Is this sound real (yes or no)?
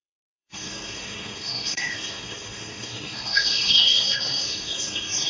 no